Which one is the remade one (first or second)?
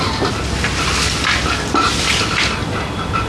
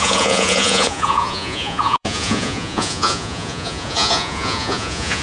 second